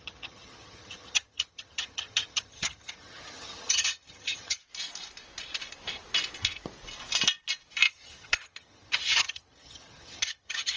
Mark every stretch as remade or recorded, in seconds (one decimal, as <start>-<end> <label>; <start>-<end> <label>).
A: 0.0-4.6 remade; 4.6-7.9 recorded; 7.9-10.8 remade

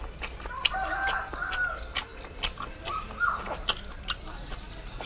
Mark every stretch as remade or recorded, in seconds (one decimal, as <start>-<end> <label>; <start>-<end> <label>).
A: 0.0-5.1 recorded

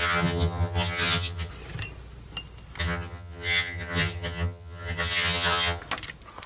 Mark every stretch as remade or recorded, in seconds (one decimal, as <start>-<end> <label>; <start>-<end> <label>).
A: 0.0-1.5 remade; 1.5-2.8 recorded; 2.8-5.8 remade; 5.8-6.5 recorded

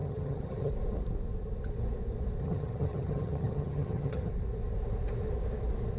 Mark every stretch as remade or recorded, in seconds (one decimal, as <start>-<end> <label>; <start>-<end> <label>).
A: 0.0-0.7 remade; 0.7-2.4 recorded; 2.4-4.3 remade; 4.3-6.0 recorded